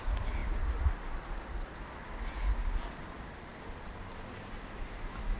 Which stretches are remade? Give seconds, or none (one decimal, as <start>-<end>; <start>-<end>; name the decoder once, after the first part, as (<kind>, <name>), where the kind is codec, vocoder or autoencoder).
none